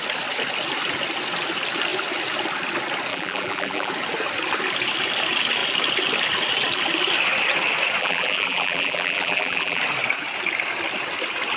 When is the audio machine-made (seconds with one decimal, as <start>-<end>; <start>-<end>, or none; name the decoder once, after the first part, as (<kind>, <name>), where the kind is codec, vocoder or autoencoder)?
3.1-3.9 (vocoder, BigVGAN v2); 8.0-9.8